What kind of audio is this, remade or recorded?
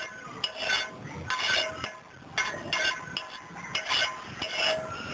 recorded